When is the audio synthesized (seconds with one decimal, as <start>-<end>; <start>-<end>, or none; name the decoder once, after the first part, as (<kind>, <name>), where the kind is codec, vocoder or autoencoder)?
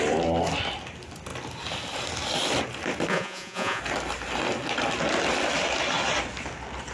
3.1-3.8 (vocoder, Vocos)